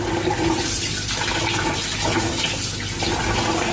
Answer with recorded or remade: recorded